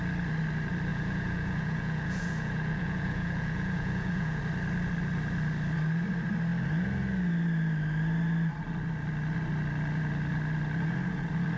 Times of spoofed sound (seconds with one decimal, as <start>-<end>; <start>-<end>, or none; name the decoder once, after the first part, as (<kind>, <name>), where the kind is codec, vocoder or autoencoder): 0.9-4.4 (vocoder, Vocos)